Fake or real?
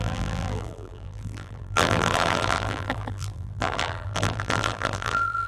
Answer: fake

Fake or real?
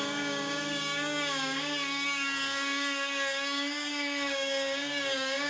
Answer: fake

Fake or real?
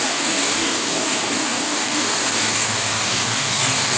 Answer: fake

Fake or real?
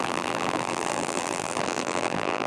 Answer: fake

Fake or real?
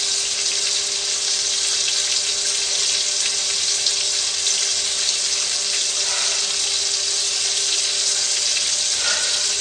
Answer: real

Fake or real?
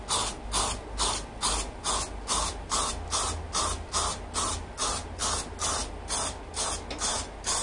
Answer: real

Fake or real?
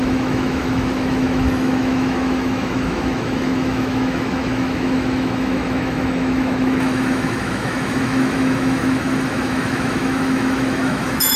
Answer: fake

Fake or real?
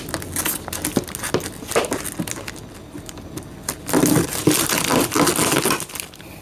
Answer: real